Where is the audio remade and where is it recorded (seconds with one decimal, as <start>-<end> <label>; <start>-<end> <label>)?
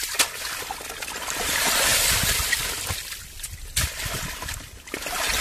0.0-5.4 recorded